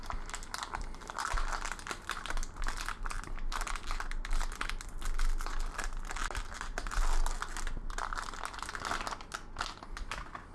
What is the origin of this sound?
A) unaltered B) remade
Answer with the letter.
A